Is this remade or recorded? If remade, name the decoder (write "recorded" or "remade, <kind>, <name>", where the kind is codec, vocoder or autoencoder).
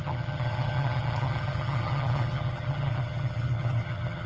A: remade, vocoder, HiFi-GAN